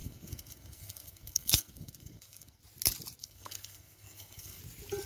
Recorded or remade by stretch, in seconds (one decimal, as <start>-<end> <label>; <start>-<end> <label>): 0.0-2.6 remade; 2.6-3.2 recorded; 3.2-4.6 remade; 4.6-5.1 recorded